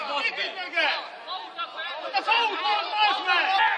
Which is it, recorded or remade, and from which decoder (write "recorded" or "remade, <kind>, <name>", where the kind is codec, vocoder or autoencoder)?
recorded